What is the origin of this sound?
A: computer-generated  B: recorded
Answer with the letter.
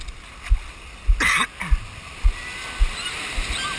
B